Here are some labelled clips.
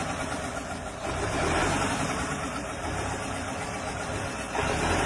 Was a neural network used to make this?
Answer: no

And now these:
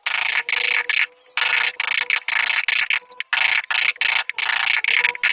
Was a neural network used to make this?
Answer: no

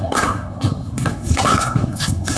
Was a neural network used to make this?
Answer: yes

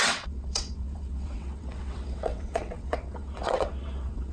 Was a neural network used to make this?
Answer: yes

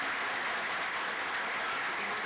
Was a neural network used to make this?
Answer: no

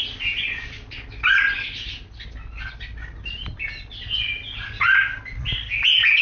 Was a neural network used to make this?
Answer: no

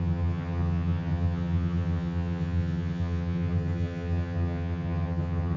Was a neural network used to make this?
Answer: yes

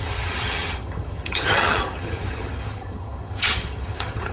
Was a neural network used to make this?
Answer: yes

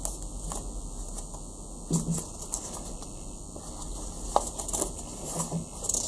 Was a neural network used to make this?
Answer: no